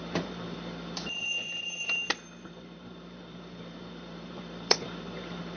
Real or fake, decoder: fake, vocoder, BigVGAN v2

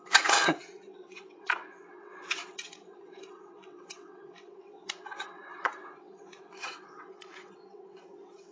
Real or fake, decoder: fake, vocoder, WaveNeXt